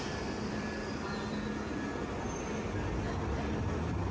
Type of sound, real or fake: real